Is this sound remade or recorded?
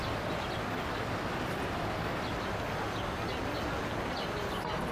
recorded